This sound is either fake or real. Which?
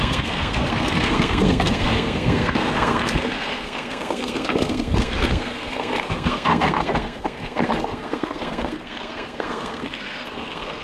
fake